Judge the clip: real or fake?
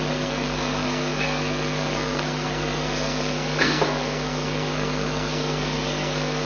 fake